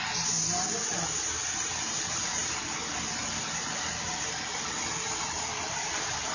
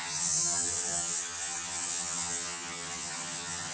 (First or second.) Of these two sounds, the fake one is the second